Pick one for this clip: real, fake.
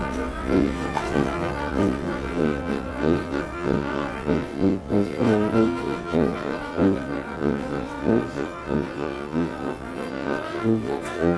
fake